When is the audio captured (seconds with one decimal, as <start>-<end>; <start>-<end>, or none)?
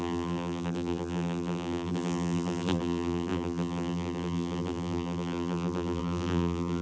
none